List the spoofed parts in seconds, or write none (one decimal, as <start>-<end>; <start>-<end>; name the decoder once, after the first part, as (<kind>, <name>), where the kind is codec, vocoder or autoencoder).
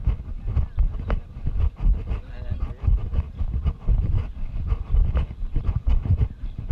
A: 3.0-3.7 (vocoder, BigVGAN v2); 5.5-6.7